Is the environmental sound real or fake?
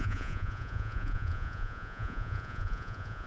fake